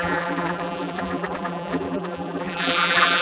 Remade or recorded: remade